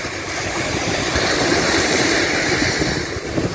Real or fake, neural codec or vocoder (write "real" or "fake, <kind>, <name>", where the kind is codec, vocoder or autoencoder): fake, vocoder, BigVGAN v2